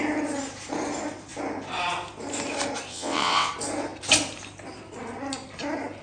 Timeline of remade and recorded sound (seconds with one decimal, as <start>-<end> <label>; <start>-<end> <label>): 0.0-2.9 recorded; 2.9-3.5 remade; 3.5-6.0 recorded